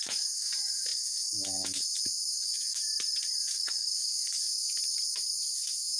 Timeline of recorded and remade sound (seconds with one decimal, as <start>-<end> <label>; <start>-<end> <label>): 0.0-2.8 remade; 2.8-3.4 recorded; 3.4-4.8 remade; 4.8-5.5 recorded; 5.5-6.0 remade